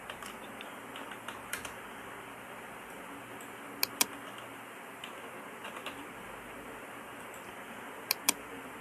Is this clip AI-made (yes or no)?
no